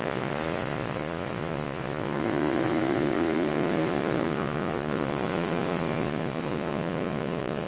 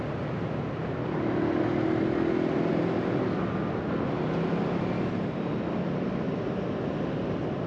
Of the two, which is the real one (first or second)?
second